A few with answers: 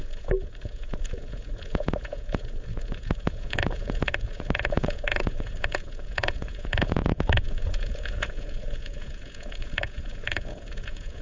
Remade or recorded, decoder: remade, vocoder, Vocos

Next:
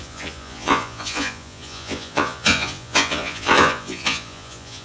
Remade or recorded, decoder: remade, vocoder, Vocos